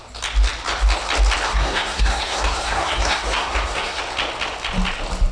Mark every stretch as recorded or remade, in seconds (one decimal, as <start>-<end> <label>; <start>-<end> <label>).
0.0-1.5 recorded; 1.5-4.0 remade; 4.0-5.3 recorded